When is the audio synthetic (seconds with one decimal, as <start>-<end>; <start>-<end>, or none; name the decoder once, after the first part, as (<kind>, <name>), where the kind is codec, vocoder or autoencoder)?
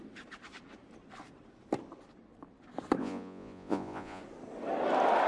3.0-4.2 (vocoder, Vocos)